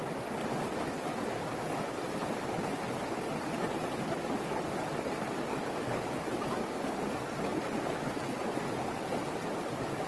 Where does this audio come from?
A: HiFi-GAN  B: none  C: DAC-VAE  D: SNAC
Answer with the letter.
B